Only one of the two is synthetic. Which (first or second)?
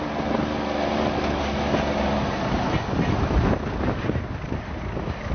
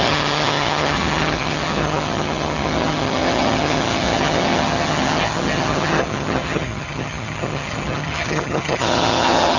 second